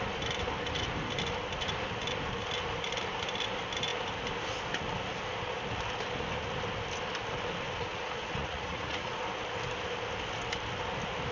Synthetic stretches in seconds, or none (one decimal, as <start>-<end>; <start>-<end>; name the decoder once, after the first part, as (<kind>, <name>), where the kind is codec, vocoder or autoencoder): 7.7-9.2 (vocoder, Vocos)